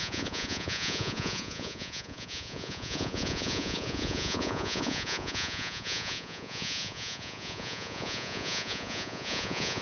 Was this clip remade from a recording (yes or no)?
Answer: yes